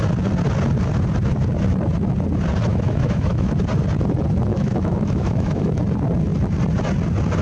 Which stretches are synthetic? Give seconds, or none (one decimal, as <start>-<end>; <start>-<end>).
2.7-3.5; 4.5-5.8